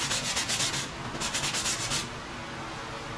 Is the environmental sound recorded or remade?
recorded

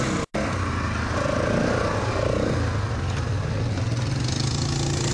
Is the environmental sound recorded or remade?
recorded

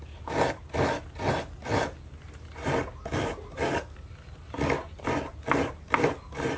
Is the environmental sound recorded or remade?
recorded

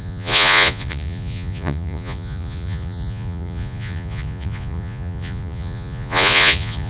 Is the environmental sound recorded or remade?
remade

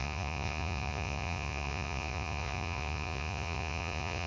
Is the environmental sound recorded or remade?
remade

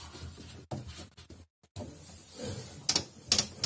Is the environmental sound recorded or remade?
recorded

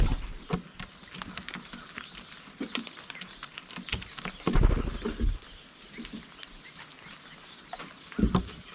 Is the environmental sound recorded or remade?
recorded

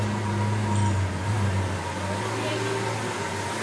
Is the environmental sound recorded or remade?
recorded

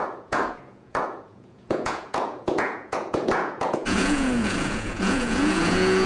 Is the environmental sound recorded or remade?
remade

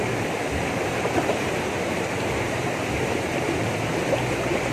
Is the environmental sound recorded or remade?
recorded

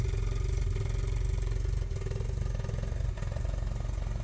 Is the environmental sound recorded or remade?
recorded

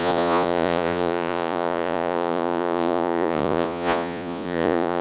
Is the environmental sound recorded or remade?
remade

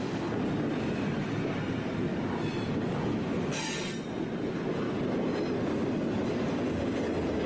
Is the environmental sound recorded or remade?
recorded